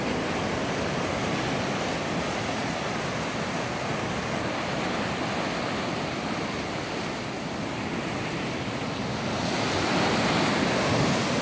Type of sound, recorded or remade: recorded